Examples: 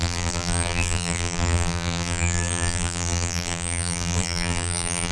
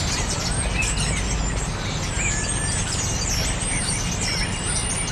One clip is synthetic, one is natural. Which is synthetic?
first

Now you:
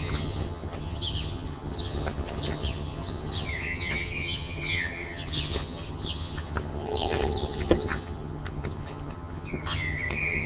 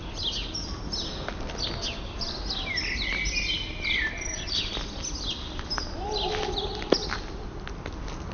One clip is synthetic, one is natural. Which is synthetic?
first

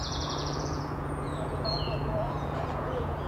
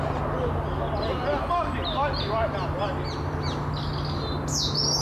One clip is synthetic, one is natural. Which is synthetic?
first